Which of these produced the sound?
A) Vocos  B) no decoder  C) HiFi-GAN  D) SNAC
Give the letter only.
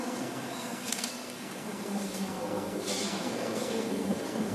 D